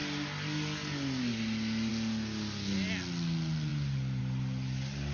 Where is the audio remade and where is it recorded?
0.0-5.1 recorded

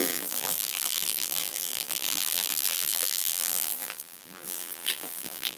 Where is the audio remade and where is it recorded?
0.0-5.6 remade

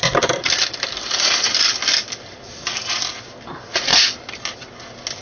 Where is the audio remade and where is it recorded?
0.0-3.1 remade; 3.1-5.2 recorded

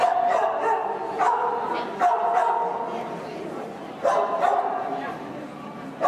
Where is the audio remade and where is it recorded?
0.0-6.1 recorded

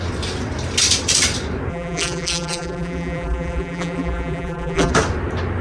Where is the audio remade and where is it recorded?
0.0-1.7 recorded; 1.7-4.9 remade; 4.9-5.6 recorded